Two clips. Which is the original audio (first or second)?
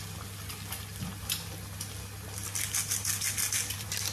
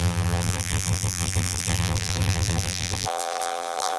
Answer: first